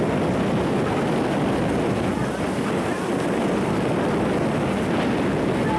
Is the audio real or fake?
real